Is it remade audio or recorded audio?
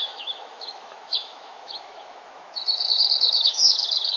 remade